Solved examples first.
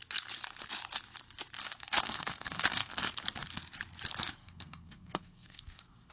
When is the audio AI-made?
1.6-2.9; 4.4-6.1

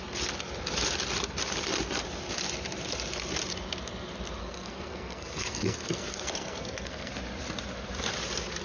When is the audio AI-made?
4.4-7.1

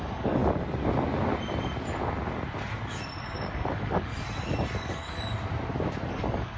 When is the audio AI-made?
0.0-0.4; 3.2-4.1; 4.8-5.3; 6.1-6.6

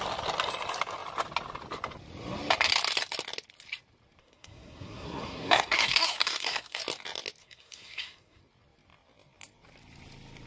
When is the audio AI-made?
4.2-6.8; 7.4-8.4

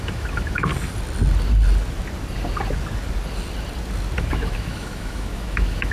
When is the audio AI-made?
0.0-0.7; 4.2-5.9